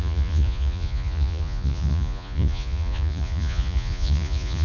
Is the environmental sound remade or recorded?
remade